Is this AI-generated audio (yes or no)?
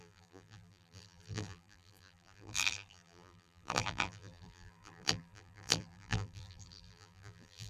yes